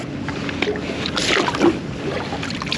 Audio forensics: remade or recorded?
recorded